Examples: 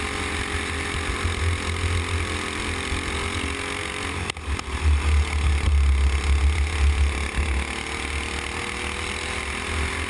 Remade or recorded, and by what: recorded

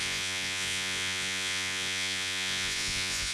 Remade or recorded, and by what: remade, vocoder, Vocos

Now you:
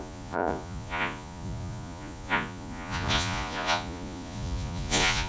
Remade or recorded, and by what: remade, vocoder, Vocos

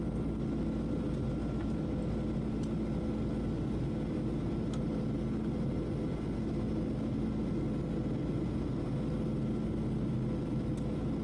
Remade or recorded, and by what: recorded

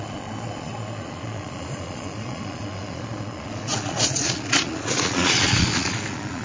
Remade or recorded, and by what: remade, vocoder, Vocos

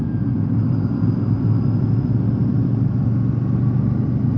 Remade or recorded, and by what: recorded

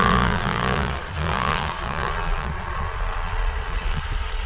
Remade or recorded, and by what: remade, vocoder, Vocos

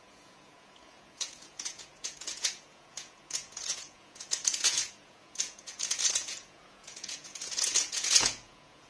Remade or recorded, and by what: remade, vocoder, Vocos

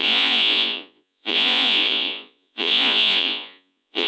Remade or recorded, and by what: remade, vocoder, Vocos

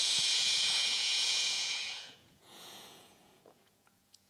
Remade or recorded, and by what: remade, vocoder, Vocos